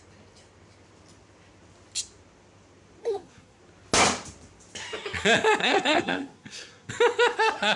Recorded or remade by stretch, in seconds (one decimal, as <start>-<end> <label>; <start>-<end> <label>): 0.0-3.0 recorded; 3.0-3.6 remade; 3.6-5.6 recorded; 5.6-6.9 remade; 6.9-7.8 recorded